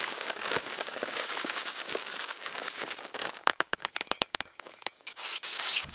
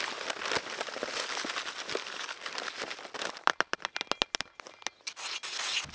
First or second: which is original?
second